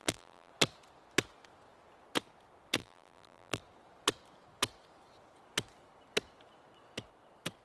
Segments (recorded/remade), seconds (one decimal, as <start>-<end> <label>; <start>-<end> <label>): 0.0-0.5 remade; 0.5-2.8 recorded; 2.8-3.6 remade; 3.6-7.6 recorded